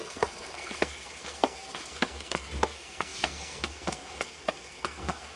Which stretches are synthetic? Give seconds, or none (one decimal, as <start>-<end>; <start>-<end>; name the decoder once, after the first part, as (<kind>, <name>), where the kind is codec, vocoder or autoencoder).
0.0-5.4 (codec, SNAC)